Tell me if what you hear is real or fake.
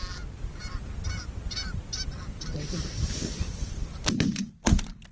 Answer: real